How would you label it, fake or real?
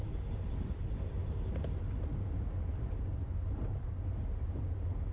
real